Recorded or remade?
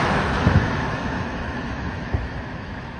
remade